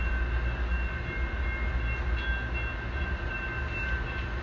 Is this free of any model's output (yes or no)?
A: yes